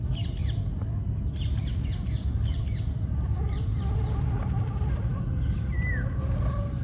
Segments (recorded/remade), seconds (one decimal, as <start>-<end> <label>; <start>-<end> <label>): 0.0-0.4 recorded; 0.4-1.1 remade; 1.1-1.7 recorded; 1.7-3.5 remade; 3.5-6.8 recorded